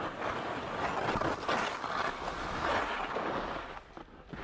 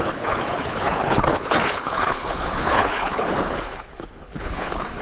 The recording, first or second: first